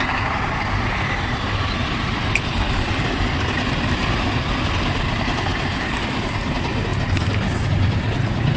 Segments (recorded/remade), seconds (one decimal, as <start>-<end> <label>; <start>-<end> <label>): 0.0-6.9 remade; 6.9-7.7 recorded; 7.7-8.6 remade